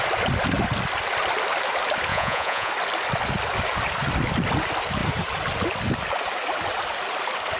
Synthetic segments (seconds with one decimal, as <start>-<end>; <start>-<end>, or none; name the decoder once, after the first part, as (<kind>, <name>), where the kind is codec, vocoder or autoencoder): 2.1-2.7 (vocoder, Vocos)